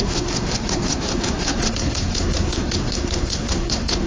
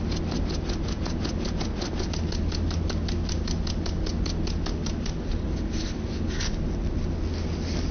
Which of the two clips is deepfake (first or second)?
first